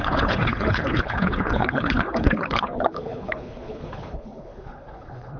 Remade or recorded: remade